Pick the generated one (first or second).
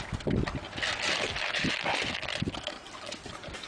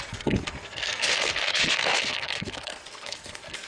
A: second